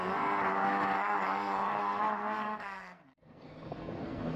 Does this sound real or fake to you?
fake